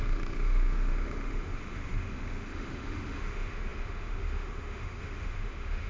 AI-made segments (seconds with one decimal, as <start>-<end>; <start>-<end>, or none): 0.0-5.9